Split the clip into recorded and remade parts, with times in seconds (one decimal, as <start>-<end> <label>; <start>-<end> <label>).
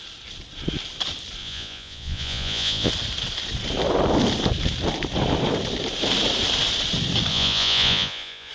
0.0-1.4 recorded; 1.4-2.9 remade; 2.9-7.3 recorded; 7.3-8.5 remade